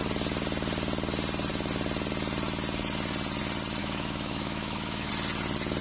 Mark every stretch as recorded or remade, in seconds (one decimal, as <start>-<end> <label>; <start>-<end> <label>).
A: 0.0-3.8 recorded; 3.8-5.1 remade; 5.1-5.8 recorded